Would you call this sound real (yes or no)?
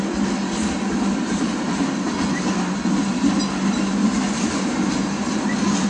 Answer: yes